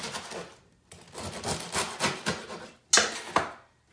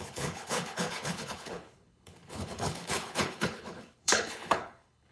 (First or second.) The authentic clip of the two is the first